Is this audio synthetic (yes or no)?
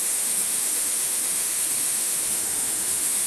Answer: yes